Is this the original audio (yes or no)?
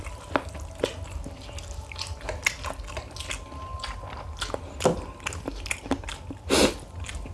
yes